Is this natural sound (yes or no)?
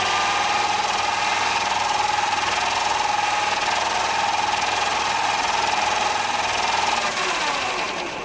yes